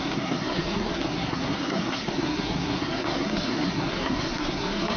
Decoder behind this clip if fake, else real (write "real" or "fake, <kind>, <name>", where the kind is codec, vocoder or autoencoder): fake, codec, SNAC